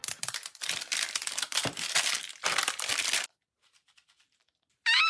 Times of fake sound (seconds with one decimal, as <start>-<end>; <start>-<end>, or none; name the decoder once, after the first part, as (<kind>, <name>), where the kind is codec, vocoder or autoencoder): none